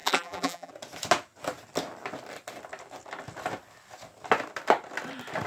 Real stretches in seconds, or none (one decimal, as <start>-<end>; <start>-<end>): 0.7-5.5